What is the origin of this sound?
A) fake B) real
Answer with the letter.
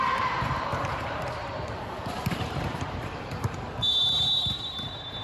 A